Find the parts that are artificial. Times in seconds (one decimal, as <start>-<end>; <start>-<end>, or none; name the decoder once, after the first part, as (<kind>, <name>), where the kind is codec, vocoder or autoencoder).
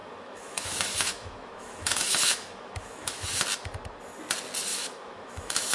0.0-3.4 (autoencoder, DAC-VAE); 4.7-5.7